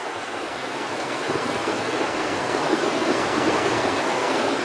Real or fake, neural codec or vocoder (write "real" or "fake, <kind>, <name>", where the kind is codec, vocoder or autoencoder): fake, codec, SNAC